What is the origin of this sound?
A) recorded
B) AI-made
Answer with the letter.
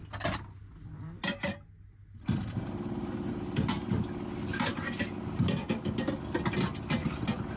A